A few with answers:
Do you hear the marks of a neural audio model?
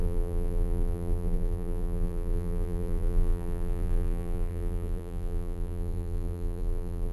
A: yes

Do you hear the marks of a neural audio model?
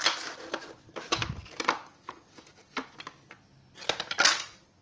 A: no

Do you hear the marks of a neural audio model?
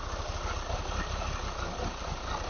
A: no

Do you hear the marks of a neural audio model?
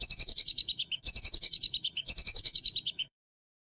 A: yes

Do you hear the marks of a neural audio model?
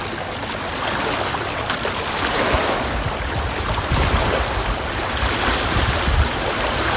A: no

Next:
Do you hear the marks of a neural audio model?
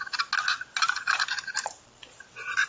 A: no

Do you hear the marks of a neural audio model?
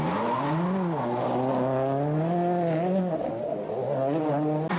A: no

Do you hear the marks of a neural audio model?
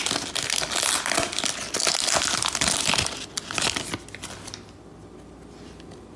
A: no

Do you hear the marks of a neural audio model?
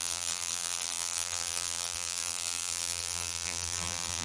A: yes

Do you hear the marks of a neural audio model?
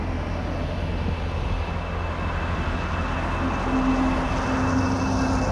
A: no